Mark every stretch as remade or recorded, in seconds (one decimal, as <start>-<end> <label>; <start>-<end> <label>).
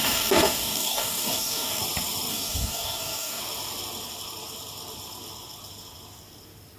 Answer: 0.0-1.8 remade; 1.8-2.3 recorded; 2.3-3.4 remade; 3.4-6.8 recorded